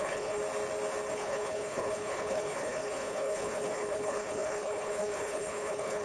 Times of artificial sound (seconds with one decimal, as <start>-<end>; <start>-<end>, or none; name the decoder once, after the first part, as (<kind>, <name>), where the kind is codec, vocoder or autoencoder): 0.0-0.4 (codec, HILCodec); 1.1-6.0